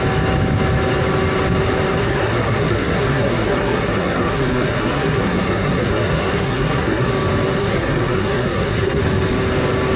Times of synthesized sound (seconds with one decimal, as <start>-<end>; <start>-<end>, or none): 2.0-7.1; 7.6-9.0